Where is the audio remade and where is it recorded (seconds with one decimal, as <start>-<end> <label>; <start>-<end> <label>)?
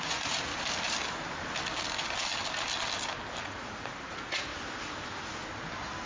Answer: 0.0-0.5 remade; 0.5-3.4 recorded; 3.4-4.5 remade; 4.5-6.1 recorded